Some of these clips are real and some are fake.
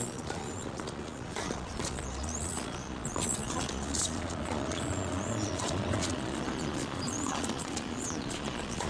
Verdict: fake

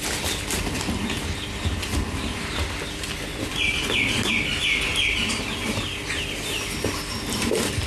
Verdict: real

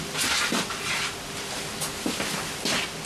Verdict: real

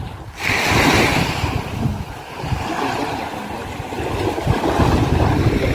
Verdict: real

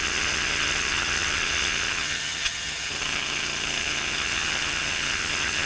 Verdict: fake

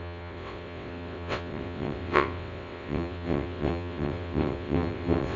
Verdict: fake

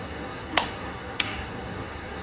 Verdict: fake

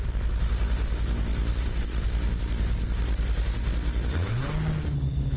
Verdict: real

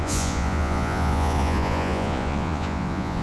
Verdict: fake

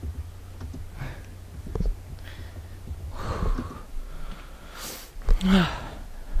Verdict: real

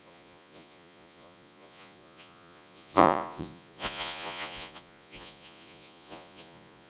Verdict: fake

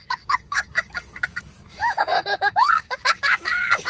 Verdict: fake